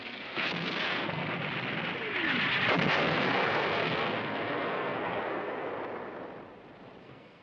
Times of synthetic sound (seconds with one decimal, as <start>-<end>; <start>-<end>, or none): 0.0-1.2; 2.7-5.7; 7.0-7.4